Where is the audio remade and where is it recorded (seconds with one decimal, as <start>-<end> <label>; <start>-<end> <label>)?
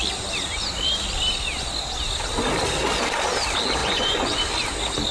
0.0-3.8 recorded; 3.8-4.4 remade; 4.4-5.1 recorded